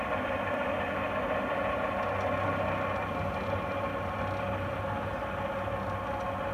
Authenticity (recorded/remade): recorded